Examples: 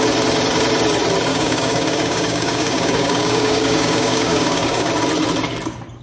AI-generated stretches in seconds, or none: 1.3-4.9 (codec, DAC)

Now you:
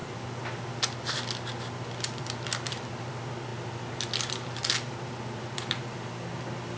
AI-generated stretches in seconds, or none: none

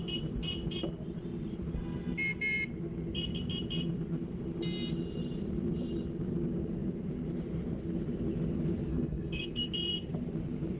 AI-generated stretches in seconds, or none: 8.9-9.7 (codec, DAC)

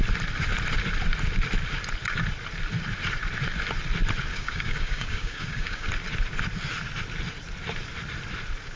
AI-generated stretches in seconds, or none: 4.3-5.9 (codec, DAC)

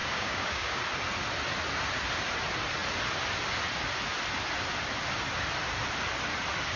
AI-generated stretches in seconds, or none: 0.0-0.8 (codec, DAC)

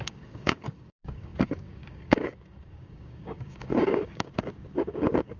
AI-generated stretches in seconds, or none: 0.0-5.4 (codec, DAC)